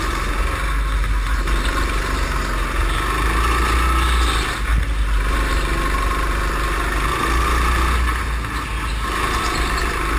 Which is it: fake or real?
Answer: real